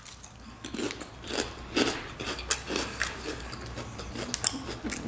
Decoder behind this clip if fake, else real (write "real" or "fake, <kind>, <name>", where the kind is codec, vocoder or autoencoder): real